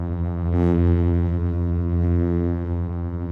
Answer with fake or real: fake